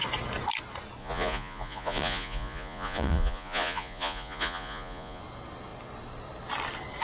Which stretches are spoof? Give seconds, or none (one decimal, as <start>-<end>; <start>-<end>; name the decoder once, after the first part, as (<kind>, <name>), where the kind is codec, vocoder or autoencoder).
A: 1.0-5.2 (vocoder, Vocos)